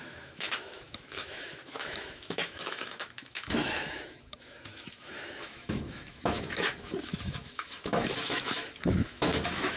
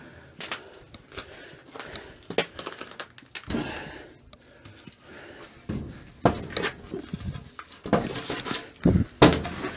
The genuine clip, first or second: second